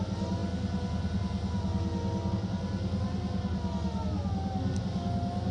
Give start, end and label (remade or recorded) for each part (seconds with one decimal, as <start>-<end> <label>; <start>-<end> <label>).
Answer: 0.0-5.5 recorded